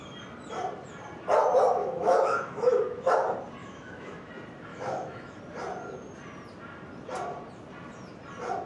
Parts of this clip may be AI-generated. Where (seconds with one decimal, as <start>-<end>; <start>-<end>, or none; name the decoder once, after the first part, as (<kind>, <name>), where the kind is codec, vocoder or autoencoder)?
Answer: 1.8-3.1 (autoencoder, DAC-VAE); 3.6-4.3; 4.7-5.4